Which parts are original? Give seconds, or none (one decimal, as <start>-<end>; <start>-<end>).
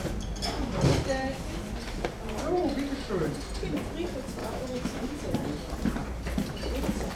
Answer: 0.0-4.4; 5.2-7.2